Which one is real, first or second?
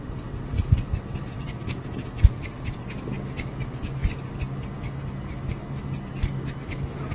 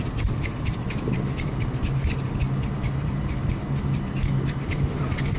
first